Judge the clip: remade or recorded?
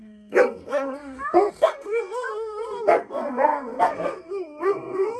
remade